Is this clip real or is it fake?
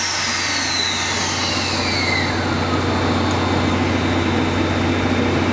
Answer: real